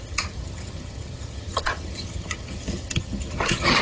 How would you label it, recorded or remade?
remade